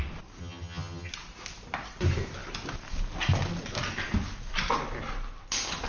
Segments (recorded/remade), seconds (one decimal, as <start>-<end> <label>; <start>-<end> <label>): 0.0-0.4 recorded; 0.4-1.1 remade; 1.1-5.9 recorded